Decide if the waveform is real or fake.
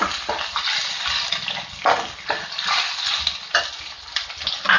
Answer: real